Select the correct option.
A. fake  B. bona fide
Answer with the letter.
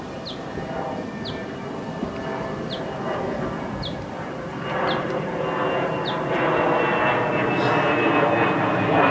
B